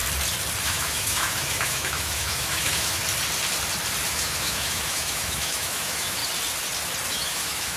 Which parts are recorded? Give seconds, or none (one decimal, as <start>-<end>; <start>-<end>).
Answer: 0.0-0.6; 3.0-4.1; 6.2-7.1